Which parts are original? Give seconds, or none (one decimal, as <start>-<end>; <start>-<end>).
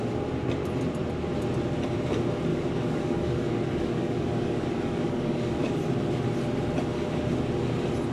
0.0-2.5; 5.8-8.1